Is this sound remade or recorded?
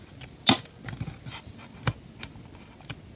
recorded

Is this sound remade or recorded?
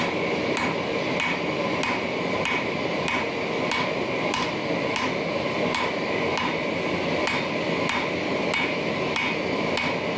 recorded